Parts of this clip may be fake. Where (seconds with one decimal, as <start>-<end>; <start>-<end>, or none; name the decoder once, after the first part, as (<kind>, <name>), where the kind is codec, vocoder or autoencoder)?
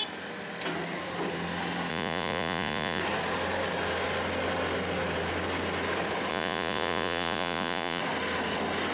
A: 1.9-3.0 (vocoder, Vocos); 6.3-8.0